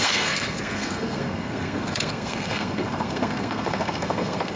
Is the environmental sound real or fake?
fake